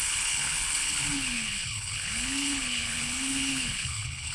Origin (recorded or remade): remade